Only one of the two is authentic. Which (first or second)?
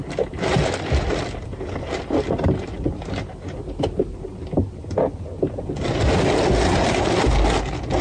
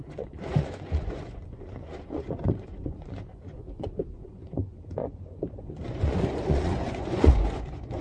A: first